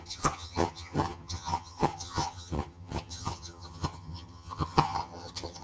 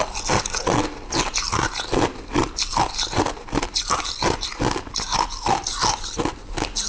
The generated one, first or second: first